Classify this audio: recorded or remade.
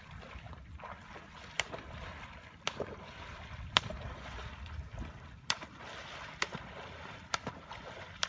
remade